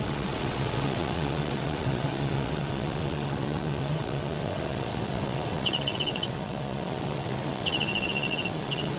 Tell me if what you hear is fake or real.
fake